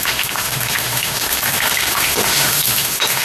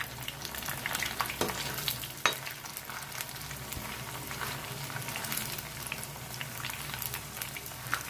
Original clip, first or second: second